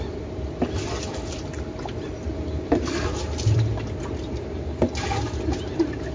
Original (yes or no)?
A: yes